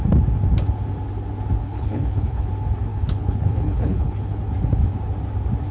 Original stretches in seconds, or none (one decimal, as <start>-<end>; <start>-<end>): 0.0-1.6; 2.5-2.9; 4.4-5.7